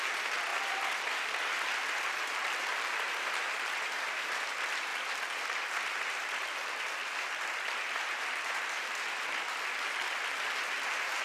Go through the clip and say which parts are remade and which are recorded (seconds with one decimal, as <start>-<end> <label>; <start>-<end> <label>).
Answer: 0.0-11.2 recorded